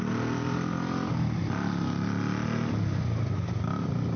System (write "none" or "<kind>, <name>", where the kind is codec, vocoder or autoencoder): none